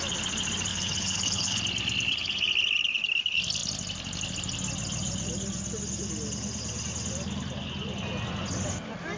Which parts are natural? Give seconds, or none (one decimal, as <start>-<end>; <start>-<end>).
0.0-0.7; 1.6-9.2